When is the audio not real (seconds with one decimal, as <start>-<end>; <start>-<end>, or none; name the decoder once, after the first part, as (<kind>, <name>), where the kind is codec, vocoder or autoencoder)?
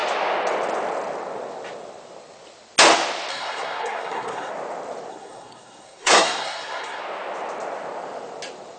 3.3-4.5 (codec, SNAC); 5.1-7.0